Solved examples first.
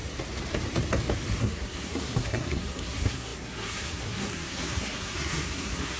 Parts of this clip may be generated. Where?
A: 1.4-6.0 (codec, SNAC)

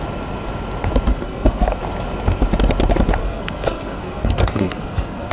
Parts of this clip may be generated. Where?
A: 1.1-1.8 (codec, SNAC); 3.2-5.3

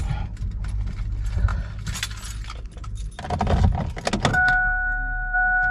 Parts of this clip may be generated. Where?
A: 4.3-5.7 (codec, SNAC)

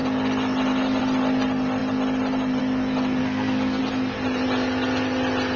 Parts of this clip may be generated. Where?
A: 3.2-3.8 (codec, SNAC)

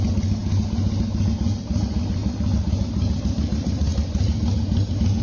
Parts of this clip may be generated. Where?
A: none

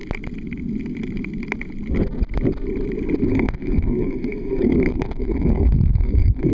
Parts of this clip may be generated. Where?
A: 3.3-6.5 (codec, SNAC)